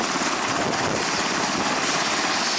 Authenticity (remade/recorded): recorded